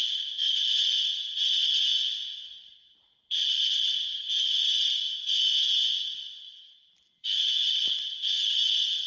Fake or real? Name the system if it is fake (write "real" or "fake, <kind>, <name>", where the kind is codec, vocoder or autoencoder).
fake, vocoder, BigVGAN v2